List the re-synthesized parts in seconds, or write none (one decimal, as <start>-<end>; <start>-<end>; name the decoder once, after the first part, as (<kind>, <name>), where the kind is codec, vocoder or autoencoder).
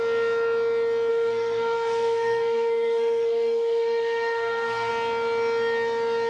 1.1-4.9 (codec, SNAC)